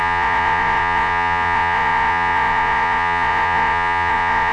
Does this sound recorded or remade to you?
remade